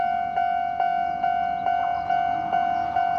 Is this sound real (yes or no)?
yes